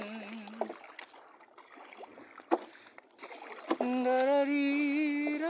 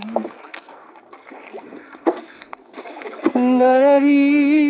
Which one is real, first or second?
first